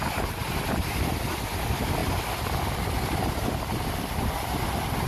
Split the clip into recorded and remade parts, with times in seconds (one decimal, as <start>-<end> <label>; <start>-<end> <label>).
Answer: 0.0-0.4 recorded; 0.4-1.0 remade; 1.0-5.1 recorded